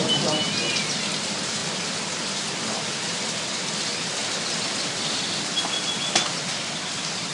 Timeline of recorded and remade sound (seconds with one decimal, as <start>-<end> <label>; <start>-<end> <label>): 0.0-7.3 recorded

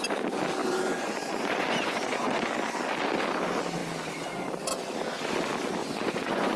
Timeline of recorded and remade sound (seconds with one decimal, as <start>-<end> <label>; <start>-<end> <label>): 0.0-0.6 recorded; 0.6-2.4 remade; 2.4-5.8 recorded; 5.8-6.6 remade

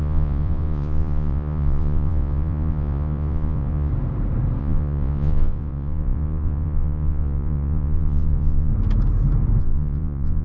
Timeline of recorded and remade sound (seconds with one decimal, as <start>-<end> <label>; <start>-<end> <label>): 0.0-3.9 remade; 3.9-4.6 recorded; 4.6-8.7 remade; 8.7-9.6 recorded; 9.6-10.4 remade

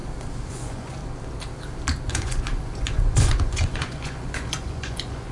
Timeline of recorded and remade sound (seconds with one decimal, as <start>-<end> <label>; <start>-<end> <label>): 0.0-0.5 recorded; 0.5-1.0 remade; 1.0-2.1 recorded; 2.1-5.3 remade

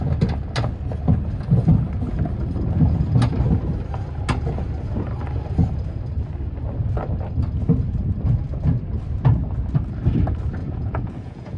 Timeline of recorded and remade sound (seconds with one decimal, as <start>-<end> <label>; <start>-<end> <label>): 0.0-10.6 recorded; 10.6-11.6 remade

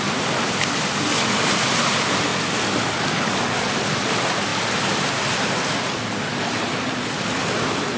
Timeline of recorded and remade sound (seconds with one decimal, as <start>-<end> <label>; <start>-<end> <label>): 0.0-8.0 recorded